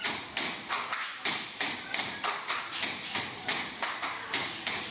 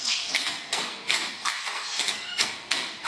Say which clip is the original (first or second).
first